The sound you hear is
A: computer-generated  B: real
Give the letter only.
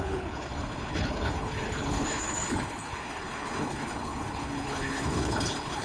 A